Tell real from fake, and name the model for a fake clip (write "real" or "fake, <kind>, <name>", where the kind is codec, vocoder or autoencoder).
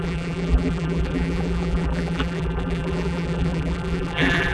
fake, vocoder, BigVGAN v2